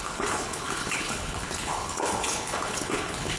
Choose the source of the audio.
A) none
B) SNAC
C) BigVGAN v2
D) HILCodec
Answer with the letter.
D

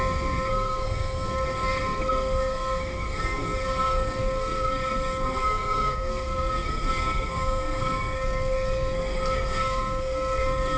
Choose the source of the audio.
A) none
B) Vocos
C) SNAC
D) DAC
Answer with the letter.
C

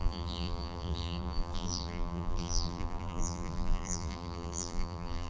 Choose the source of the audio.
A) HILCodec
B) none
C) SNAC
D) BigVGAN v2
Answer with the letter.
D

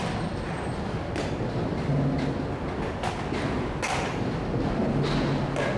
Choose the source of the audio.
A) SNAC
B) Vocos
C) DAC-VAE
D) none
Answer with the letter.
D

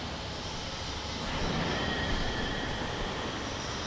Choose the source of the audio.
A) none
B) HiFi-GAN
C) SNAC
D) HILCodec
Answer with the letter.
A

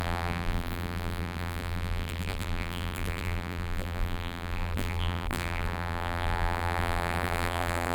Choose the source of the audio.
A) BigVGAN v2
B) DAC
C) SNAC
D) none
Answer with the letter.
A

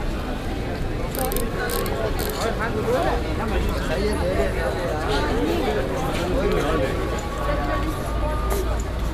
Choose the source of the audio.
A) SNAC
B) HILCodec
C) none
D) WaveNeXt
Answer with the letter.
C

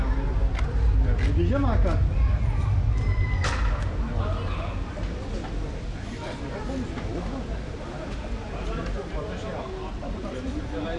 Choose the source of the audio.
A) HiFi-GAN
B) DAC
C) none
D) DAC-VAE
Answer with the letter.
C